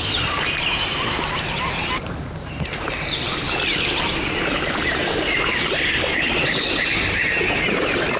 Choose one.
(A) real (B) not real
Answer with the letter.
B